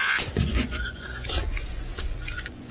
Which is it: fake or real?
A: fake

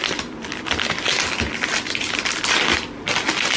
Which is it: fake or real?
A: real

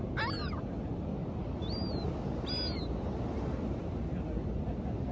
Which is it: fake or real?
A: real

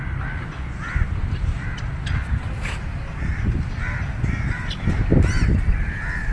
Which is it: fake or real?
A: real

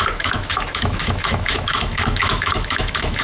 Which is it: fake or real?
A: fake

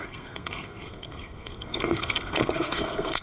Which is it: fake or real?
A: fake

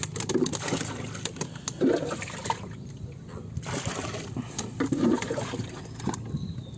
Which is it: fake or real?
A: real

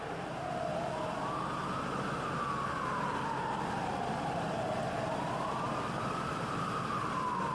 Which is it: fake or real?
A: real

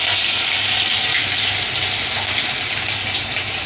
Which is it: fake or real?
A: real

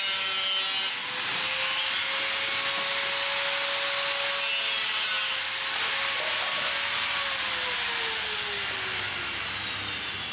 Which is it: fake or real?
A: real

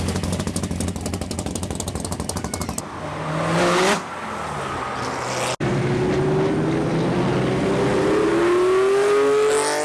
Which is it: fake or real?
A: real